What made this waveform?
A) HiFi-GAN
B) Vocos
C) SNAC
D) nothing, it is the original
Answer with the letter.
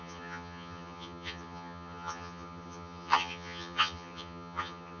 A